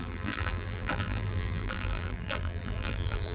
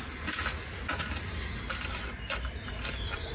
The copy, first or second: first